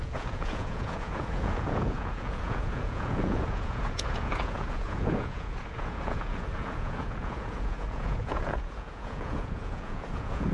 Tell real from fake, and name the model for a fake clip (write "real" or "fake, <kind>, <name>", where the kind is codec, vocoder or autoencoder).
fake, vocoder, Vocos